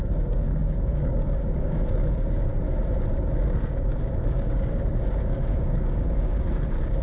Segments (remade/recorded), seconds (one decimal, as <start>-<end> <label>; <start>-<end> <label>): 0.0-2.5 remade; 2.5-3.3 recorded; 3.3-7.0 remade